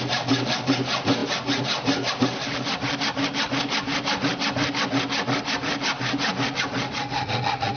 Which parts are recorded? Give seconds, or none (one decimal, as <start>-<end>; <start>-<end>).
0.0-7.8